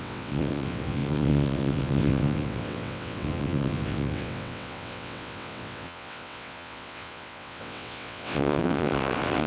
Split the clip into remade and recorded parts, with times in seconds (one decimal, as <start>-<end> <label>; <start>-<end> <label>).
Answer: 0.0-9.5 remade